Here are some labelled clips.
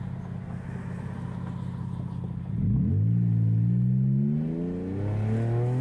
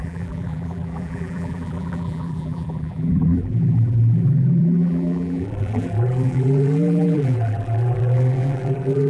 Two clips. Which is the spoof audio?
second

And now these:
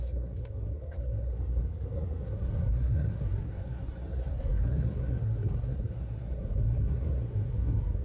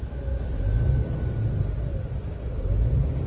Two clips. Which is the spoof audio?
first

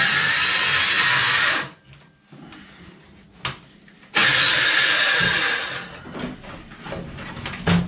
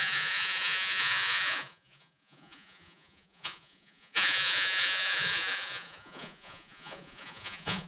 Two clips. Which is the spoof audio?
second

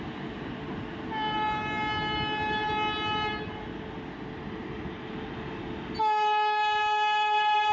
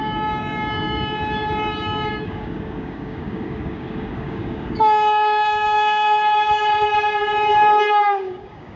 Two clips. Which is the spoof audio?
second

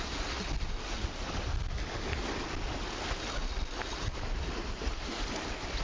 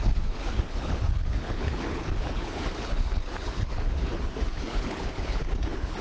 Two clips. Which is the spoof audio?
second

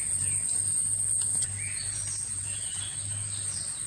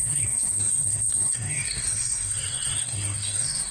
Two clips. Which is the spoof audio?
second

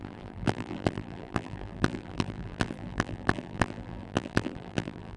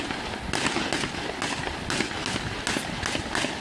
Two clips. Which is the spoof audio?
first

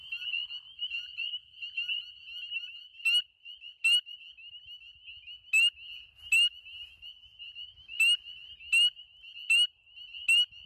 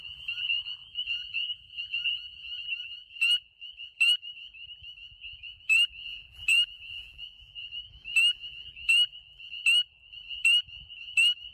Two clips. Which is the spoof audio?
second